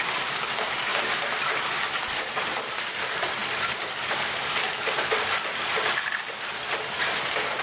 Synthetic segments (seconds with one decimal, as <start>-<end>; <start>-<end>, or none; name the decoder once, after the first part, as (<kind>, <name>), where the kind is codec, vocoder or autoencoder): none